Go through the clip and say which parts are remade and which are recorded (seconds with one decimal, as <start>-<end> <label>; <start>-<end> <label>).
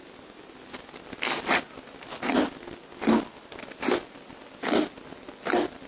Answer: 0.0-5.9 recorded